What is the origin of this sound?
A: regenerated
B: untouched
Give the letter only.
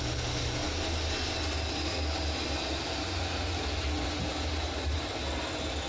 B